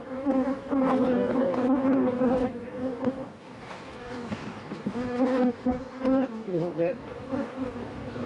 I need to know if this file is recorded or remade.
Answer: remade